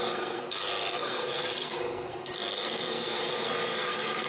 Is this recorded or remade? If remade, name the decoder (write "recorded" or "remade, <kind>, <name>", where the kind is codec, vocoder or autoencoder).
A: remade, codec, SNAC